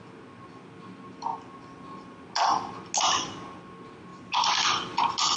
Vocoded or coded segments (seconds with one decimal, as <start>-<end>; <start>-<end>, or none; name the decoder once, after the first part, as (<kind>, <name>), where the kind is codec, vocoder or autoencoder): none